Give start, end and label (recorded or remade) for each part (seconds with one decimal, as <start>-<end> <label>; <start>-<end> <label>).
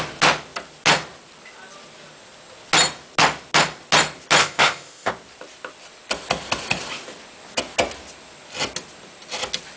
0.0-4.4 recorded; 4.4-5.1 remade; 5.1-9.8 recorded